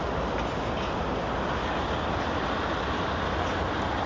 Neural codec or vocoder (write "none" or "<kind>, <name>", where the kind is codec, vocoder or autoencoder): none